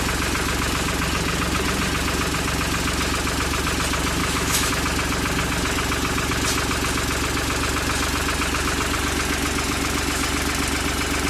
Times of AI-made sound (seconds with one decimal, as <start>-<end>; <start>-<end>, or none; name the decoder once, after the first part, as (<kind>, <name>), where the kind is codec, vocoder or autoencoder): 4.2-4.7 (autoencoder, DAC-VAE)

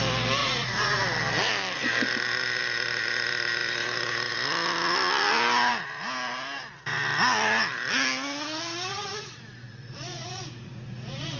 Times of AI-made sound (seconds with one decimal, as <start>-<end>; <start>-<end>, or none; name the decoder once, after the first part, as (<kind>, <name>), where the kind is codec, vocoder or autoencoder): 0.4-1.0 (vocoder, Vocos); 8.9-11.4

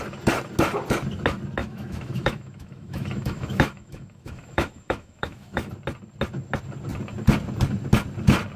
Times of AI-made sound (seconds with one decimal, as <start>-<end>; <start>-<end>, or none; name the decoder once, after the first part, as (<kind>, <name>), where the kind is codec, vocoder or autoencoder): 1.6-5.7 (autoencoder, DAC-VAE)

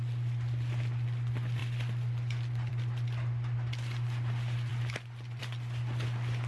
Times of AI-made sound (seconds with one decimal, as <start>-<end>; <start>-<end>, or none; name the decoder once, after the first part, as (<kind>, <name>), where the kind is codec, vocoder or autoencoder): none

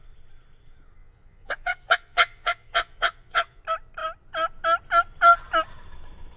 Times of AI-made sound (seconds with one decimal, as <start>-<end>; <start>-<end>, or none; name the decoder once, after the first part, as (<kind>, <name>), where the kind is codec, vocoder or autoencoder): 1.0-3.6 (vocoder, Vocos)

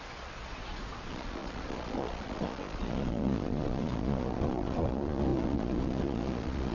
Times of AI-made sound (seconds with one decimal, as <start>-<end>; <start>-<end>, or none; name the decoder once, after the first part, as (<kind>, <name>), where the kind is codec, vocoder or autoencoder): 0.0-6.7 (vocoder, Vocos)

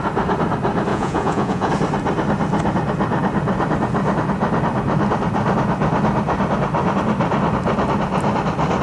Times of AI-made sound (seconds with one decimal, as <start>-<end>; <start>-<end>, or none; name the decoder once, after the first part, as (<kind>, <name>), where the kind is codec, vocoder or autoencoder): 0.9-1.7 (vocoder, Vocos)